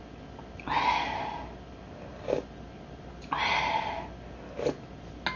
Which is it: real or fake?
real